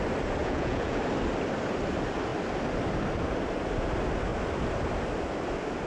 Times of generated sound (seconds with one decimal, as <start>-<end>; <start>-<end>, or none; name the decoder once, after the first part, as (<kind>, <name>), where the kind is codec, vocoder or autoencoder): 0.4-1.0 (vocoder, Vocos)